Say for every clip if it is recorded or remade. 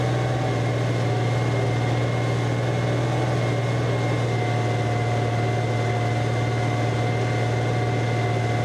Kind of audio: recorded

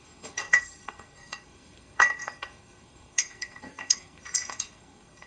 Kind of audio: remade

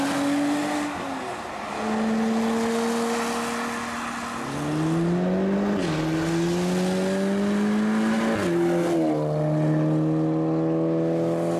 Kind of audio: recorded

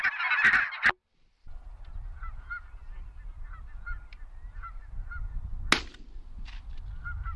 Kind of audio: recorded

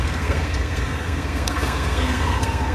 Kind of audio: remade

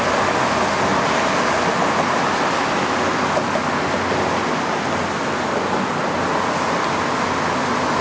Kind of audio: recorded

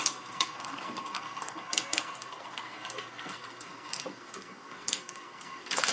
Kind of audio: remade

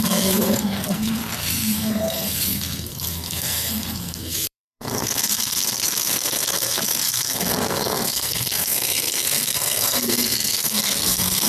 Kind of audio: remade